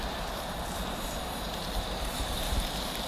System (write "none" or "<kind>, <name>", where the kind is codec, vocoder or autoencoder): vocoder, BigVGAN v2